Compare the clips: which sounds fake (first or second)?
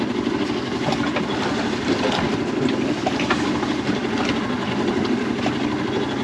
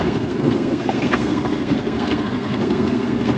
second